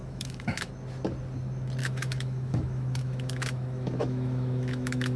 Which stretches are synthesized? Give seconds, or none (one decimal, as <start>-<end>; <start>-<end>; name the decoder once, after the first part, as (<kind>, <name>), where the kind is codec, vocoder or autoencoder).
0.0-0.7 (autoencoder, DAC-VAE); 1.8-5.2